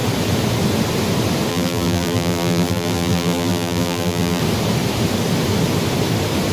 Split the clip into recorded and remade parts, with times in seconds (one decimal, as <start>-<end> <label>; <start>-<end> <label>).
0.0-1.5 recorded; 1.5-4.4 remade; 4.4-6.5 recorded